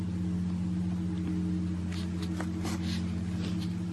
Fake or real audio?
real